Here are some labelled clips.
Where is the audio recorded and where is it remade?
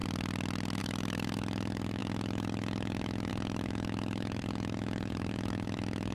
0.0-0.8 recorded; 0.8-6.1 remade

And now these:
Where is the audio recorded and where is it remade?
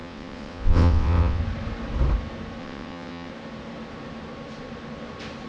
0.0-1.4 remade; 1.4-2.6 recorded; 2.6-3.3 remade; 3.3-5.5 recorded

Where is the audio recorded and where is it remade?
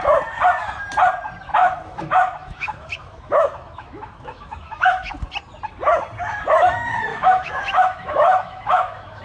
0.0-1.6 recorded; 1.6-5.1 remade; 5.1-7.1 recorded; 7.1-9.2 remade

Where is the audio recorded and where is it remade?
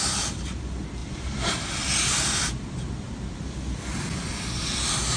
0.0-1.0 recorded; 1.0-3.1 remade; 3.1-5.2 recorded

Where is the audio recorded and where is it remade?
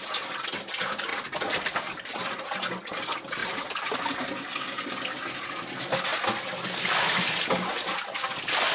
0.0-8.7 recorded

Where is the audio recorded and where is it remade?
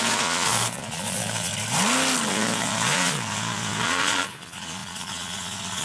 0.0-1.5 remade; 1.5-2.3 recorded; 2.3-5.8 remade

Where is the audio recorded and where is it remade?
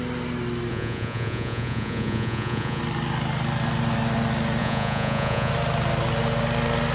0.0-0.7 recorded; 0.7-2.8 remade; 2.8-4.6 recorded; 4.6-5.5 remade; 5.5-6.9 recorded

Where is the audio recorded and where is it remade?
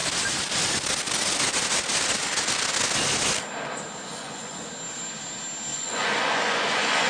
0.0-4.1 recorded; 4.1-4.6 remade; 4.6-5.7 recorded; 5.7-7.1 remade